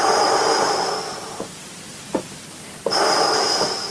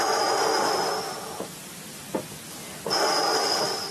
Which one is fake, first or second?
first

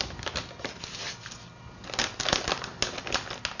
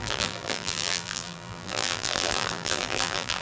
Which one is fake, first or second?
second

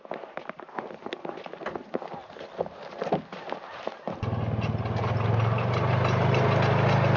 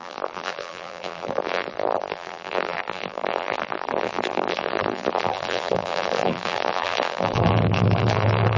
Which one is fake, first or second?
second